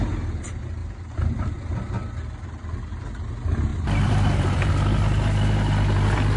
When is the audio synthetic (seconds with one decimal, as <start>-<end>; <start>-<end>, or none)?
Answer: 0.8-1.6; 3.7-4.7